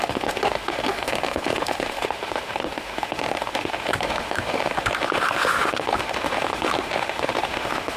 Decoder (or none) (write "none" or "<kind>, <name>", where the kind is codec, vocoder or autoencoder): autoencoder, DAC-VAE